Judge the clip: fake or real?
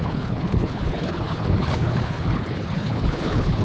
fake